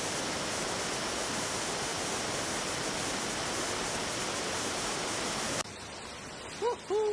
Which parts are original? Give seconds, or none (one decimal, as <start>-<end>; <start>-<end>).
0.0-7.1